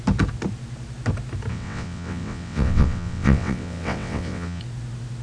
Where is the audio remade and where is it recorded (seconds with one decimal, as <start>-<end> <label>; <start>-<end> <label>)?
0.0-1.5 recorded; 1.5-4.6 remade; 4.6-5.2 recorded